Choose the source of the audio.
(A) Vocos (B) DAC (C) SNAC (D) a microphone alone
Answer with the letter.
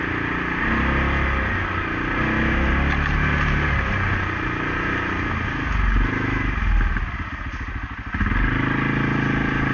D